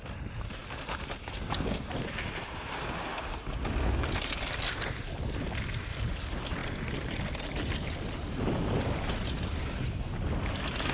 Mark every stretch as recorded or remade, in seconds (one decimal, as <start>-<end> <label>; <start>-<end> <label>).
0.0-10.9 recorded